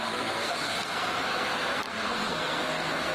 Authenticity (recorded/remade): remade